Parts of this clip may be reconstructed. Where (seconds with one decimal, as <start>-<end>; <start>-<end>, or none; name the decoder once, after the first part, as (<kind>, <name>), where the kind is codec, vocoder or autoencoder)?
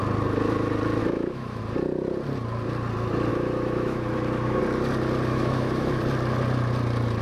1.0-1.6 (autoencoder, DAC-VAE); 3.3-4.6; 5.3-5.9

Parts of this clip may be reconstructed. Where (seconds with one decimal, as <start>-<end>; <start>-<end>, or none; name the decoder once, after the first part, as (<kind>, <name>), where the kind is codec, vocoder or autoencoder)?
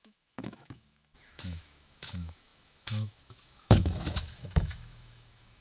0.0-5.6 (autoencoder, DAC-VAE)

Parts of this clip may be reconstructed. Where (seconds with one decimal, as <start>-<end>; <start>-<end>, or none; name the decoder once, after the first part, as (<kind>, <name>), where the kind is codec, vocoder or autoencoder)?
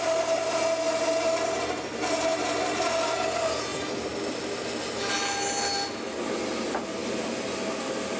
none